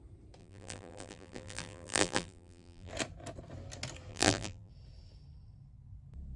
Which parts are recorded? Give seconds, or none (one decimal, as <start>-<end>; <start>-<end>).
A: 0.0-0.4; 2.9-4.1; 4.7-6.4